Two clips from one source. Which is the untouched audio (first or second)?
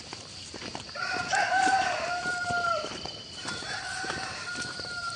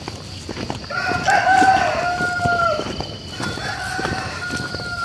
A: second